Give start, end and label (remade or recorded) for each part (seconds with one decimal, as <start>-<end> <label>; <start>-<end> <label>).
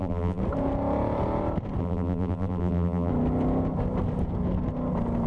0.0-0.4 remade; 0.4-1.8 recorded; 1.8-3.1 remade; 3.1-5.3 recorded